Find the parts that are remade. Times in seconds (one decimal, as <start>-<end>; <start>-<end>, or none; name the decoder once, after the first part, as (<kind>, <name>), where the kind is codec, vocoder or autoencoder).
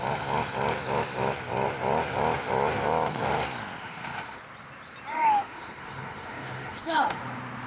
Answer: 3.8-4.4 (autoencoder, DAC-VAE); 5.1-7.2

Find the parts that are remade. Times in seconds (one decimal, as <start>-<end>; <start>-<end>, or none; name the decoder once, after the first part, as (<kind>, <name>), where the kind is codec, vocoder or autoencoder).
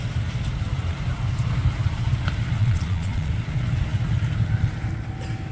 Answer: 2.6-3.3 (vocoder, Vocos)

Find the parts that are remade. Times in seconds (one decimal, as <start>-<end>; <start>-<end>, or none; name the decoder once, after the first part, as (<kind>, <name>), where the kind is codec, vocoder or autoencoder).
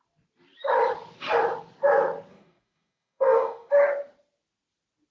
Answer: 2.3-3.7 (codec, DAC)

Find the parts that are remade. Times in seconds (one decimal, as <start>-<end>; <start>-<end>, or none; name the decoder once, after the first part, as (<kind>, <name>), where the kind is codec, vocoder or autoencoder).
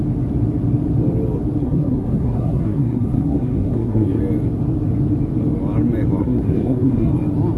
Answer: 1.6-4.2 (codec, SNAC); 6.2-7.1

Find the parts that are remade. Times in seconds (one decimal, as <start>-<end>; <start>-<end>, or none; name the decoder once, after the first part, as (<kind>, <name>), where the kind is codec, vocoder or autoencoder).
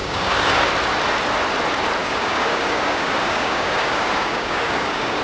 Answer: 0.0-0.7 (codec, DAC); 2.0-5.2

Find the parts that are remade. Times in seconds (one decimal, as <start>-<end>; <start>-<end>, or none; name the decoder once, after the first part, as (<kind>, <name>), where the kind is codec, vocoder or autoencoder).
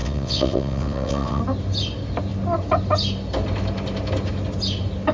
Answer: 0.0-1.4 (vocoder, WaveNeXt)